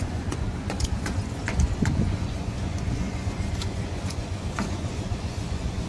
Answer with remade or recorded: remade